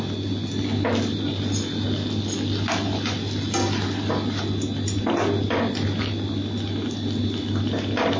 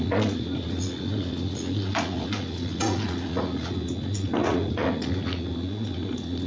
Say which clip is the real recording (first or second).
first